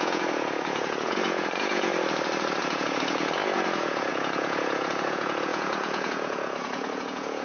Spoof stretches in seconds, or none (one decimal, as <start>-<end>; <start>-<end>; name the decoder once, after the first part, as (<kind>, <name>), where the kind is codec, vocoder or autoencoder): 0.0-1.9 (vocoder, Vocos); 2.6-7.4

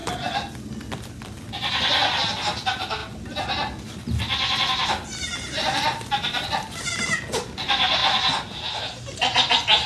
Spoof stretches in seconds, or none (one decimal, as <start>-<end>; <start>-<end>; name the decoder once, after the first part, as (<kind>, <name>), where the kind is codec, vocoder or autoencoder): none

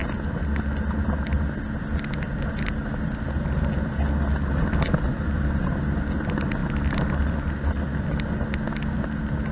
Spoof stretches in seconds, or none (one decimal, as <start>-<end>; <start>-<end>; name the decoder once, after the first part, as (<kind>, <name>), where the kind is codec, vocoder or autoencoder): none

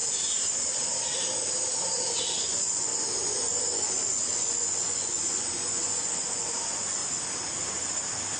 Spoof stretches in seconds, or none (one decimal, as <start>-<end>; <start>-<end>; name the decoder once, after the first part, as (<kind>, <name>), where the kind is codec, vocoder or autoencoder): 1.8-7.0 (vocoder, Vocos)

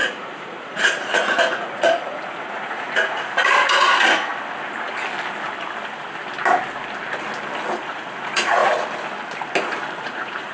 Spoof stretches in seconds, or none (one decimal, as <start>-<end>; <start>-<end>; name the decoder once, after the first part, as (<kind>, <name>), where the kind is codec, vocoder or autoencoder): 0.0-4.3 (vocoder, Vocos); 7.8-8.6; 10.0-10.5